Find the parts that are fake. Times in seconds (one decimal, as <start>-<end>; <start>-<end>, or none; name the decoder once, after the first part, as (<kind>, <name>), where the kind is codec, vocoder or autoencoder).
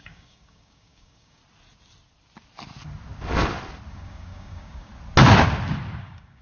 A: 0.0-1.4 (codec, DAC); 3.9-4.9; 6.0-6.4